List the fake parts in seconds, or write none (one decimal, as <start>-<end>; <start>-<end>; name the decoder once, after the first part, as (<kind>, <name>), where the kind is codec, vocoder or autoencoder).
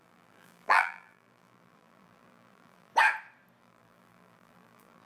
0.0-2.9 (vocoder, BigVGAN v2); 3.6-5.1